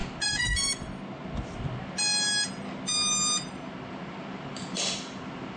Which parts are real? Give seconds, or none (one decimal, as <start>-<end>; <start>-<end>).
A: 0.0-5.6